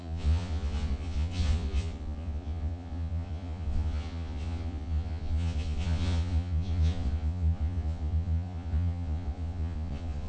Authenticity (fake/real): fake